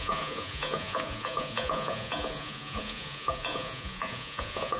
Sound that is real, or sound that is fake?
fake